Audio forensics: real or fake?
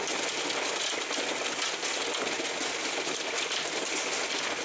real